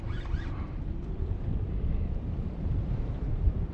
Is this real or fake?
real